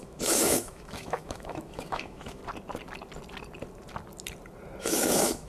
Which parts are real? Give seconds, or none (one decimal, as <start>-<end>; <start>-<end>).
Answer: 2.4-4.8